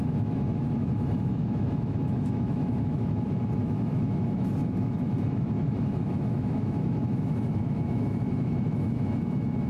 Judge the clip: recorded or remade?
remade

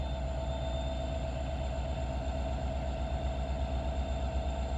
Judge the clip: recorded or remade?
recorded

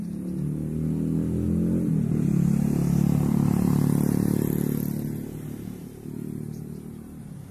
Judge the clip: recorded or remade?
recorded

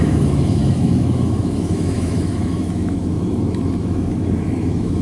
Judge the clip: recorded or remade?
remade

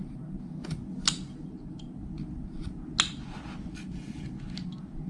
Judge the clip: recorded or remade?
recorded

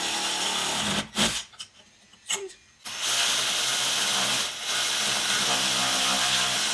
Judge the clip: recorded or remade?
recorded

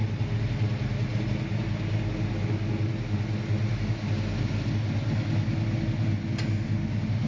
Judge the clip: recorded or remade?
recorded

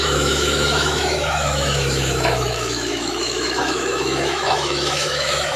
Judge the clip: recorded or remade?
remade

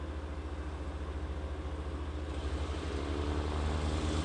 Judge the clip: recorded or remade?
recorded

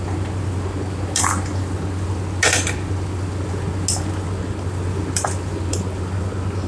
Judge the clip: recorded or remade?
recorded